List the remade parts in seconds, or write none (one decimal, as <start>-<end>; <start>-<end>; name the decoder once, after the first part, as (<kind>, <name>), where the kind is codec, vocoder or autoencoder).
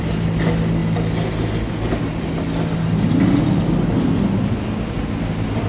none